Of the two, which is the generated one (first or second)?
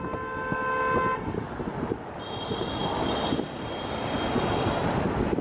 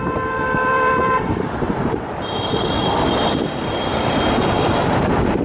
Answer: second